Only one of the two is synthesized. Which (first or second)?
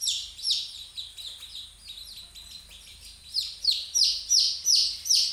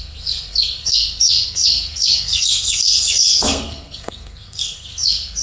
second